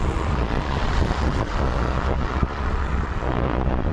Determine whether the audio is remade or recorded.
remade